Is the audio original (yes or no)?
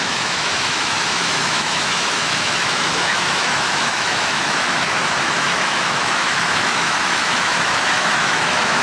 no